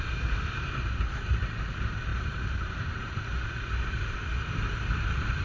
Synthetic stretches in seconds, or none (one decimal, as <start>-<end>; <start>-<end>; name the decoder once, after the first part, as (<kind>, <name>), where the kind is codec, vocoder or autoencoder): 0.0-5.4 (vocoder, BigVGAN v2)